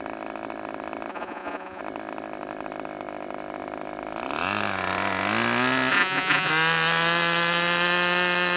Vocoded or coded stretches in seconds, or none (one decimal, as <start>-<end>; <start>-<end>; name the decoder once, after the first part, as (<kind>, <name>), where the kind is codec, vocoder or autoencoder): 1.1-1.8 (vocoder, Vocos); 5.9-6.5